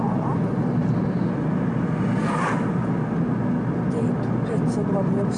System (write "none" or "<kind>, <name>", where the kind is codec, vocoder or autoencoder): none